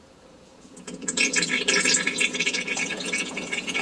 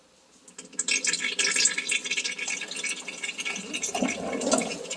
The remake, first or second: first